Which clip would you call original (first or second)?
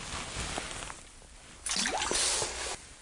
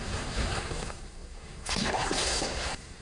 first